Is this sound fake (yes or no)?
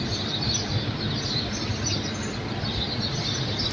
no